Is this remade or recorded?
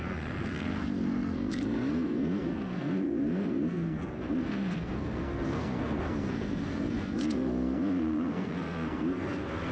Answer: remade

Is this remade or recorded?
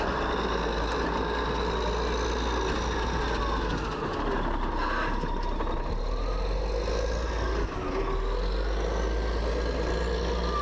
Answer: recorded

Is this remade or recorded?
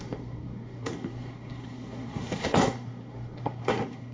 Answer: remade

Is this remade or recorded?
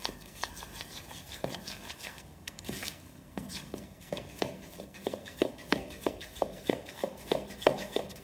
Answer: remade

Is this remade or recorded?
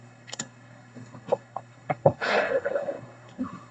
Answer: remade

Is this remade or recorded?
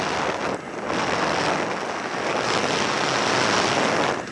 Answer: recorded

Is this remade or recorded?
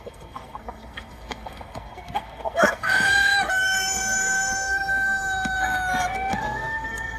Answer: remade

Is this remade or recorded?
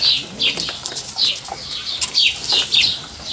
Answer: recorded